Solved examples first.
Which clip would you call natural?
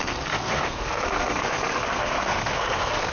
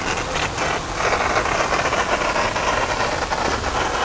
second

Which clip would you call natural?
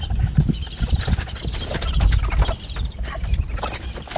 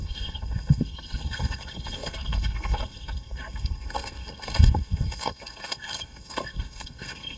first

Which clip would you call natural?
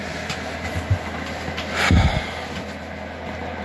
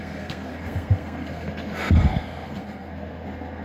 first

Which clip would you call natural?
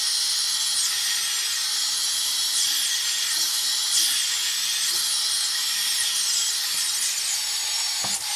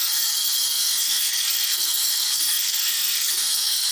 first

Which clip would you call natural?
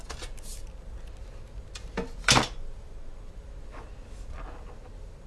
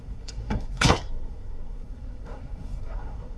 first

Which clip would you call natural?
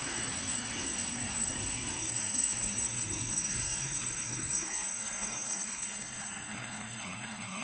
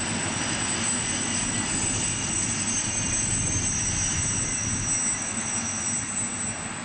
second